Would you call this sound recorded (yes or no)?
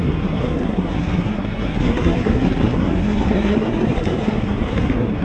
no